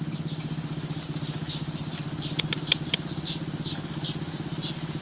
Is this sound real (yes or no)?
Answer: yes